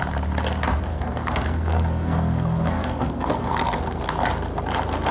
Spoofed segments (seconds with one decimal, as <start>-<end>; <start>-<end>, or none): 0.9-4.0